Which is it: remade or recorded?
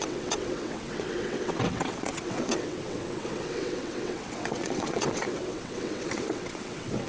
remade